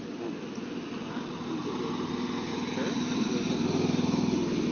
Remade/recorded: recorded